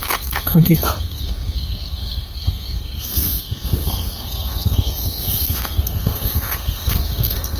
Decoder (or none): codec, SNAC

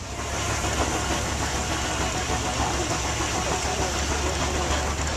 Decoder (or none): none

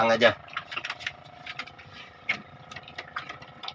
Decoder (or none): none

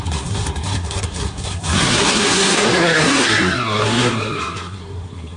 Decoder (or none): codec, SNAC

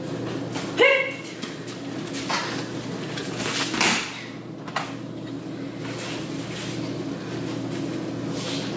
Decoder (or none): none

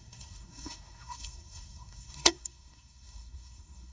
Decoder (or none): codec, SNAC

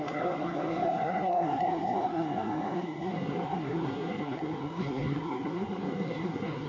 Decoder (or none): codec, SNAC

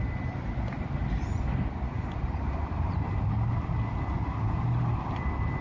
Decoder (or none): none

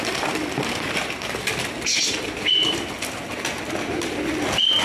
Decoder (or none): none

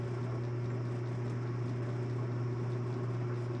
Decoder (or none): none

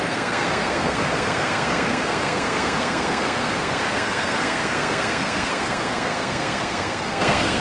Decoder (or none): codec, SNAC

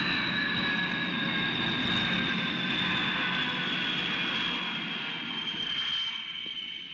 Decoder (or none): none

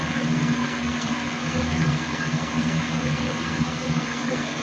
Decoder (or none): codec, SNAC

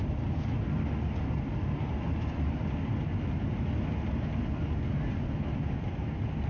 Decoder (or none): none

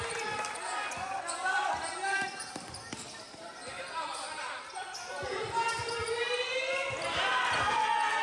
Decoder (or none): none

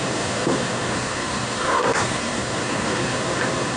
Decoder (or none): codec, SNAC